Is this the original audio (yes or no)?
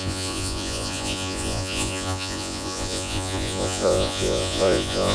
no